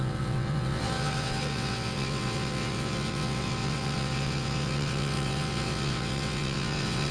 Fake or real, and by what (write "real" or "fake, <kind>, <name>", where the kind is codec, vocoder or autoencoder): fake, vocoder, WaveNeXt